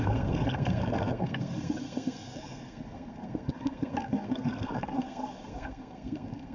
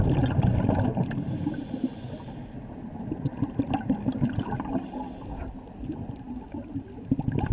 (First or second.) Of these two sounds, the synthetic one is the first